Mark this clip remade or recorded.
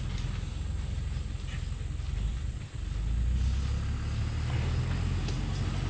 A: recorded